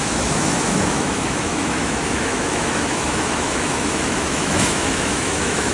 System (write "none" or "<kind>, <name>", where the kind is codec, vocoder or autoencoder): autoencoder, DAC-VAE